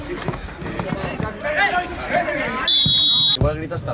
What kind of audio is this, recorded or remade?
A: recorded